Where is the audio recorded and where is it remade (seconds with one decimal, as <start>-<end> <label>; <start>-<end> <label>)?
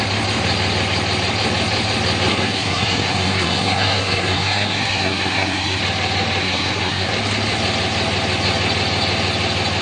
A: 0.0-2.3 recorded; 2.3-5.8 remade; 5.8-6.4 recorded; 6.4-7.1 remade; 7.1-9.8 recorded